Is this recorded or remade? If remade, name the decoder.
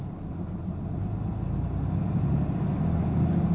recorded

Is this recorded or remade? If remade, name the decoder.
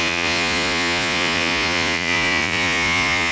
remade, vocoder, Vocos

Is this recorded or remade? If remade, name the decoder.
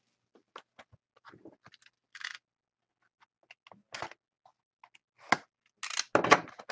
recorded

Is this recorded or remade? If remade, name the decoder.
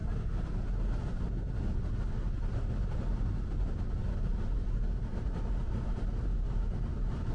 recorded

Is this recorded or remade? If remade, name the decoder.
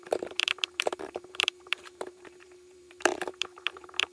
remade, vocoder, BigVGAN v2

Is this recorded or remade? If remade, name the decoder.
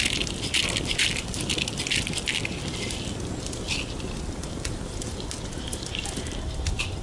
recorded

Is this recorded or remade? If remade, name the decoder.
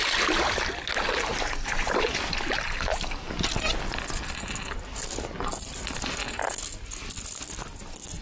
recorded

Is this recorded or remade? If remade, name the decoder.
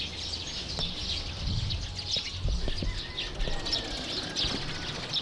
recorded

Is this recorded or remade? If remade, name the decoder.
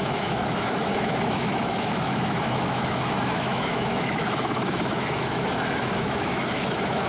remade, autoencoder, DAC-VAE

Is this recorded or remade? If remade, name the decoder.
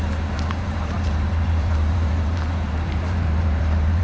remade, vocoder, BigVGAN v2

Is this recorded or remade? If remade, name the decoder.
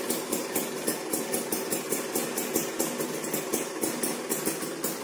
recorded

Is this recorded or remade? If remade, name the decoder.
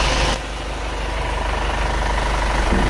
recorded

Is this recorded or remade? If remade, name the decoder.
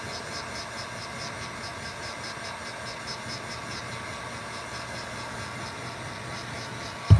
recorded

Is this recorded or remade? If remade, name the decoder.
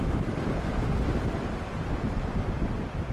recorded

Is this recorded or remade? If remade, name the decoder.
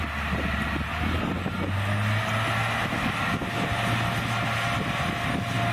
recorded